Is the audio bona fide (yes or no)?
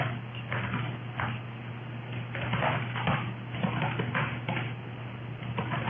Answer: yes